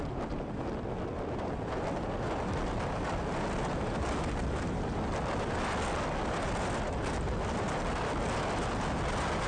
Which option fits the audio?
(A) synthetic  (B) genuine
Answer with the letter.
B